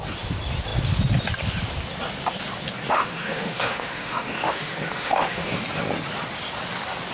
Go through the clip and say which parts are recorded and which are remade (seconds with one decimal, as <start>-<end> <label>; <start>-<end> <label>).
0.0-2.9 recorded; 2.9-5.6 remade; 5.6-7.1 recorded